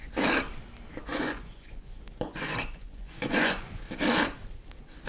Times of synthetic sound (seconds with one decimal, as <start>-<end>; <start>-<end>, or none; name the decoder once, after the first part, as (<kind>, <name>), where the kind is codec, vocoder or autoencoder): 1.1-3.8 (vocoder, Vocos)